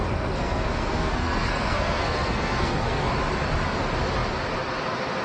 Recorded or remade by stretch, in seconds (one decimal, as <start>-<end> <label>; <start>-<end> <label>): 0.0-3.1 remade; 3.1-5.2 recorded